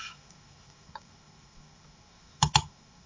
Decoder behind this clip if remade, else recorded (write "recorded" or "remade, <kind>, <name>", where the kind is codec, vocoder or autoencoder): remade, autoencoder, DAC-VAE